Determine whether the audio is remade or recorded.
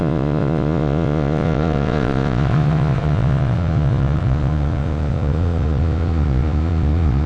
remade